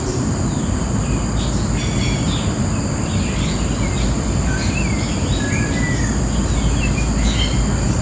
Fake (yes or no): no